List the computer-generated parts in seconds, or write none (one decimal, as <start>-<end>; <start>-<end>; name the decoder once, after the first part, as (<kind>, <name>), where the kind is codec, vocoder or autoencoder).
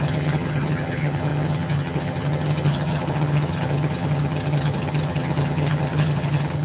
0.0-6.6 (vocoder, HiFi-GAN)